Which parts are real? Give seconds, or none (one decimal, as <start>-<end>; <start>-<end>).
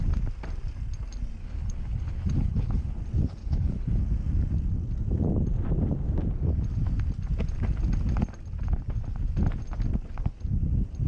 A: 0.0-1.4; 3.0-3.4; 4.0-11.1